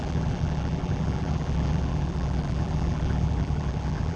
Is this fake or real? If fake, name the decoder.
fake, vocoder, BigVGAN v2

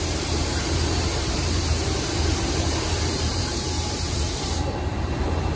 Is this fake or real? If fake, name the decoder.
fake, vocoder, BigVGAN v2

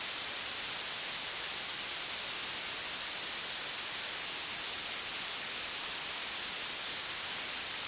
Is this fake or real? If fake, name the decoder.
real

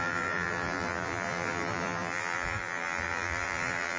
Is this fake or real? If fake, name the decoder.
fake, vocoder, BigVGAN v2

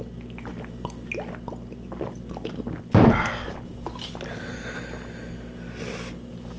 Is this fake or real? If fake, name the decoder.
real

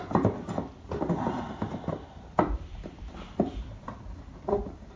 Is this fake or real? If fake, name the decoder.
fake, vocoder, BigVGAN v2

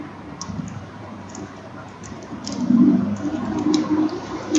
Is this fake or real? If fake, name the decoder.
fake, vocoder, BigVGAN v2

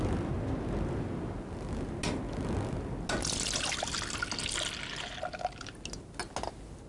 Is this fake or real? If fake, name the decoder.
real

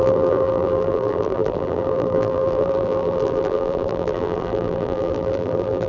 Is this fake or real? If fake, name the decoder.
fake, vocoder, BigVGAN v2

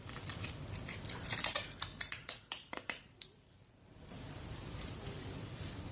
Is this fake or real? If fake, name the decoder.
fake, vocoder, BigVGAN v2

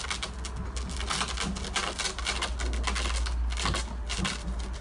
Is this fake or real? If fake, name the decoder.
real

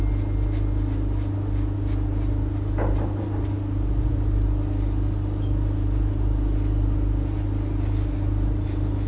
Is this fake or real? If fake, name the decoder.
real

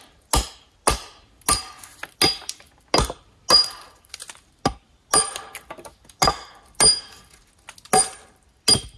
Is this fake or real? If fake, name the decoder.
real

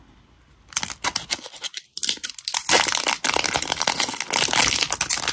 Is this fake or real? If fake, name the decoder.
real